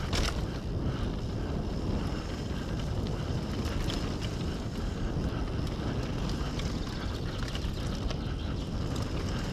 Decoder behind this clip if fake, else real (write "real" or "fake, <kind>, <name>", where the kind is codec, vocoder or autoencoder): real